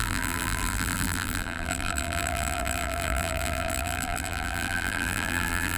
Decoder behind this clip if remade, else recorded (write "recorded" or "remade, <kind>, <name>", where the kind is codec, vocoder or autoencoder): remade, vocoder, BigVGAN v2